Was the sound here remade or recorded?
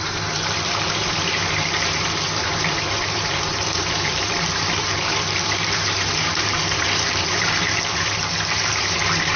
remade